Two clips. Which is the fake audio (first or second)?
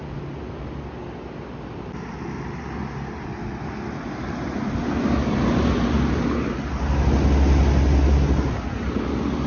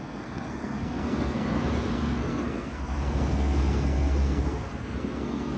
second